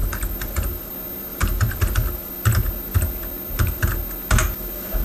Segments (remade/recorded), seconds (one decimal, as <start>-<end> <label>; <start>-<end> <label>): 0.0-0.9 remade; 0.9-1.3 recorded; 1.3-2.3 remade; 2.3-5.0 recorded